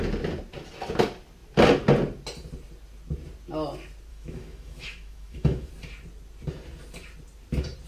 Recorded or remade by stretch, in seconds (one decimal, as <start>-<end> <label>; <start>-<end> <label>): 0.0-4.1 recorded; 4.1-5.7 remade; 5.7-7.9 recorded